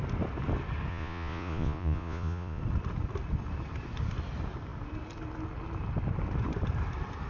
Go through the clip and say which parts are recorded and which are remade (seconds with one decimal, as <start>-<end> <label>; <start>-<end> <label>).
0.0-0.9 recorded; 0.9-2.6 remade; 2.6-7.3 recorded